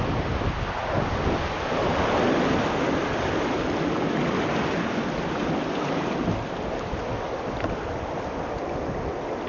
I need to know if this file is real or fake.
real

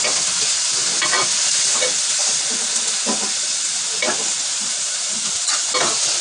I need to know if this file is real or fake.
real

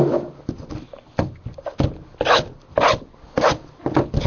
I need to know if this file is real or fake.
real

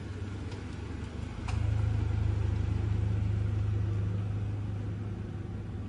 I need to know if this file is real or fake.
real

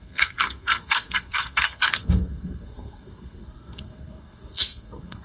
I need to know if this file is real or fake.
fake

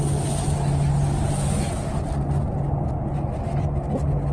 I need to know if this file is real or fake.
real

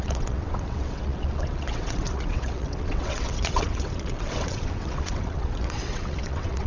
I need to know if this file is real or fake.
fake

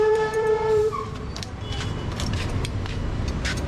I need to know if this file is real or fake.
fake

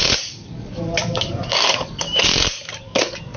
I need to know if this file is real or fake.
fake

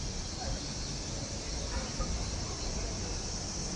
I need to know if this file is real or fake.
real